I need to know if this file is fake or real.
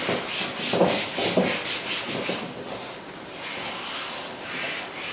real